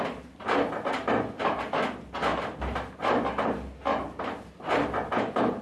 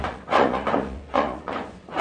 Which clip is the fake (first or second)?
second